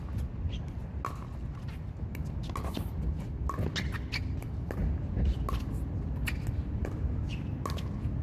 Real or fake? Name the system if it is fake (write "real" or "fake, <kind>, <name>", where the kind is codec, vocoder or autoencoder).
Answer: real